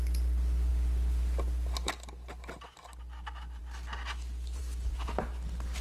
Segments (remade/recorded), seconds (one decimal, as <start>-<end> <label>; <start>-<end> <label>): 0.0-5.8 recorded